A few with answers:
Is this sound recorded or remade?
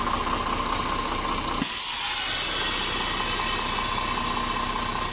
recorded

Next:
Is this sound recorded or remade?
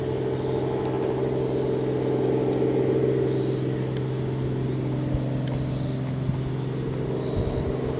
recorded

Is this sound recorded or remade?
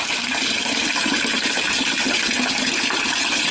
remade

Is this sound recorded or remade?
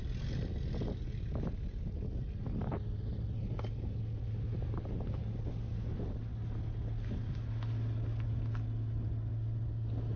recorded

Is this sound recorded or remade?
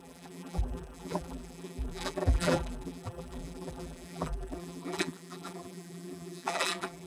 remade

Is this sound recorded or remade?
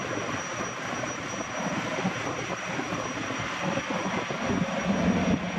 recorded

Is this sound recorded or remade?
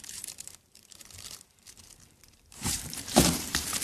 remade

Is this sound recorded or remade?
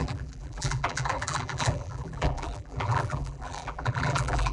remade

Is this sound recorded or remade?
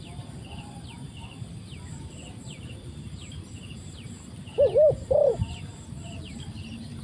remade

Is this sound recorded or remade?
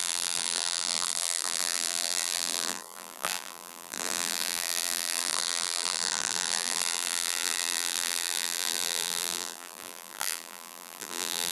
remade